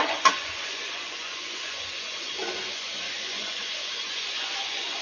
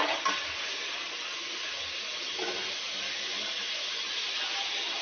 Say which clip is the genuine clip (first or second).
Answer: second